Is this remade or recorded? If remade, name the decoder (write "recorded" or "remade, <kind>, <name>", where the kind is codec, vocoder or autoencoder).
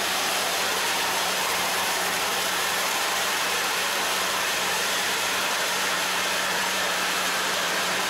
remade, vocoder, BigVGAN v2